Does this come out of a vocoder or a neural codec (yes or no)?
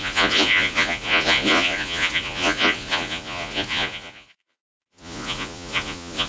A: yes